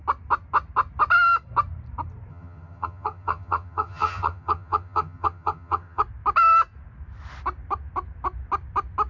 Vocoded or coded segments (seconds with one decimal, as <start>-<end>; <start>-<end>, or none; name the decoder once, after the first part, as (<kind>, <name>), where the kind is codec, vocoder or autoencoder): 2.3-6.0 (vocoder, HiFi-GAN)